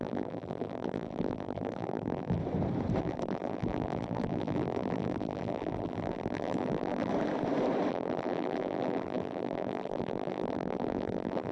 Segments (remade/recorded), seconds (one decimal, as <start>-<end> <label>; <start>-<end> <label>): 0.0-2.4 remade; 2.4-3.0 recorded; 3.0-7.1 remade; 7.1-7.9 recorded; 7.9-11.5 remade